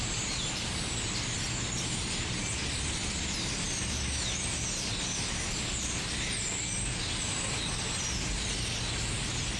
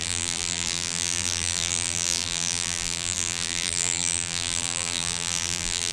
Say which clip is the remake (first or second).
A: second